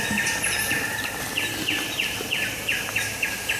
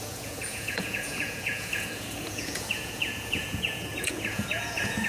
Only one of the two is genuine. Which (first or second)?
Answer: first